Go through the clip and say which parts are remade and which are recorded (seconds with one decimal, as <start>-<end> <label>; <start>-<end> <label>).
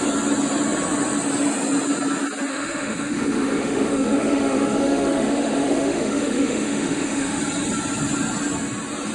0.0-2.5 recorded; 2.5-7.4 remade; 7.4-9.1 recorded